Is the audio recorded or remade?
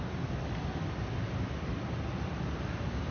remade